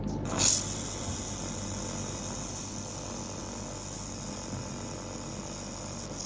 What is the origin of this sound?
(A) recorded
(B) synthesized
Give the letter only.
A